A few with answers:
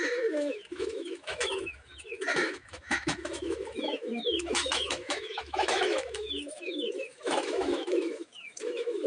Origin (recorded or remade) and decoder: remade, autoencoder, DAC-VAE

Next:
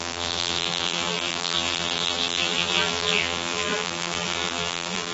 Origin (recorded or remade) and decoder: remade, vocoder, BigVGAN v2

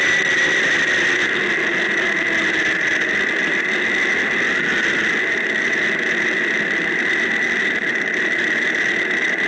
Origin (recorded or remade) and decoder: recorded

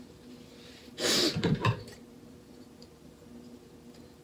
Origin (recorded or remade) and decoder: remade, vocoder, BigVGAN v2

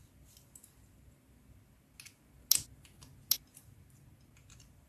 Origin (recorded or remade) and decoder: recorded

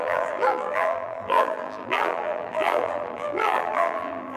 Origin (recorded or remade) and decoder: remade, vocoder, BigVGAN v2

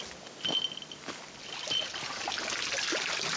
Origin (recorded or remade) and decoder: recorded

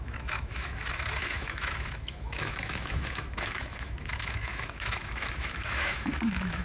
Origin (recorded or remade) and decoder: remade, autoencoder, DAC-VAE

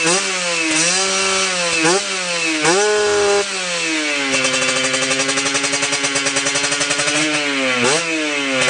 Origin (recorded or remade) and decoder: recorded